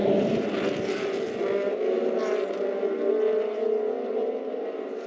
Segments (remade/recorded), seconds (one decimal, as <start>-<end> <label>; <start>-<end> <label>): 0.0-5.1 recorded